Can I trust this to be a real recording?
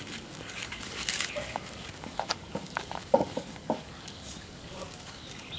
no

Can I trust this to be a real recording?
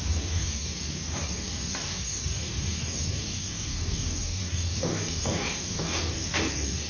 no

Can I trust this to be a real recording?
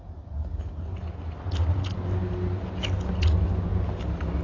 yes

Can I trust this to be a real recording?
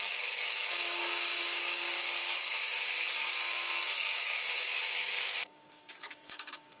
no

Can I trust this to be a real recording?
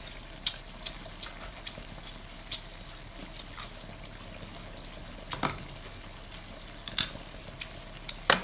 yes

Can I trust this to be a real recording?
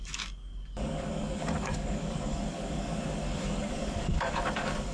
no